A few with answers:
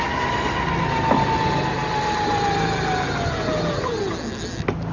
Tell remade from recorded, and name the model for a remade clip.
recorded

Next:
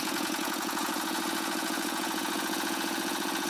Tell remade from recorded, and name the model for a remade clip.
remade, vocoder, Vocos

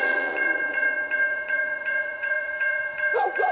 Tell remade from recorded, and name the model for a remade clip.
remade, vocoder, Vocos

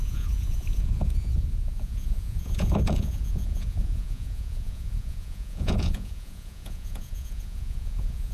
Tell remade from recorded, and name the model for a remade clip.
remade, vocoder, Vocos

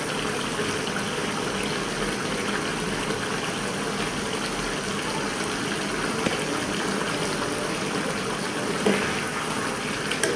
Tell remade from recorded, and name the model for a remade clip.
recorded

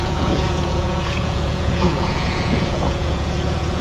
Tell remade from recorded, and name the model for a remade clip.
remade, vocoder, Vocos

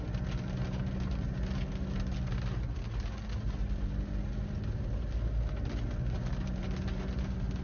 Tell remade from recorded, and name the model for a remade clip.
recorded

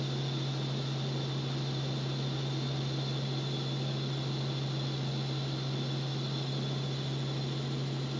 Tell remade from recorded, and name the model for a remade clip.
recorded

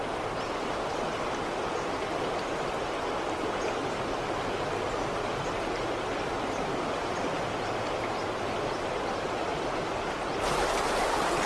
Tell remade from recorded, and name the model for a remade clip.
recorded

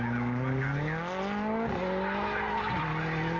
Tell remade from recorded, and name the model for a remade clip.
recorded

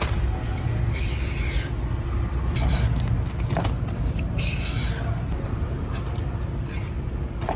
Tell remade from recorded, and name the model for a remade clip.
recorded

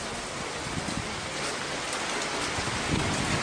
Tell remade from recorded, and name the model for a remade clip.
recorded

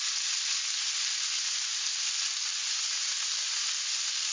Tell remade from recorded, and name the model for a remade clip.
recorded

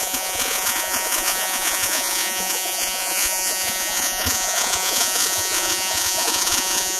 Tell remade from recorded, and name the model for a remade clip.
remade, vocoder, Vocos